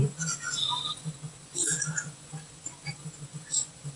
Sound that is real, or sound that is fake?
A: fake